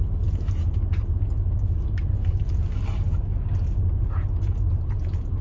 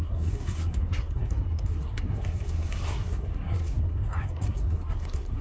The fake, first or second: second